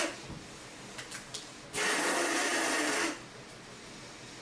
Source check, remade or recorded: recorded